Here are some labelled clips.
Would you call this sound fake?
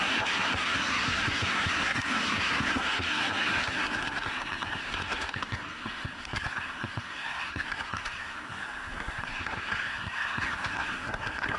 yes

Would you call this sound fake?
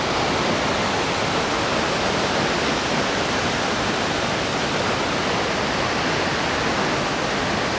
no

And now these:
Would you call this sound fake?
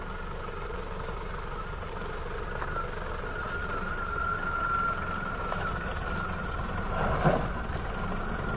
no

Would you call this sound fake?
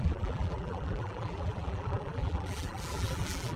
yes